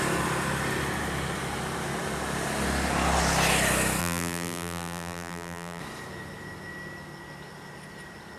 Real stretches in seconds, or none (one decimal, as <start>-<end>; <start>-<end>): 0.0-4.0; 5.8-8.4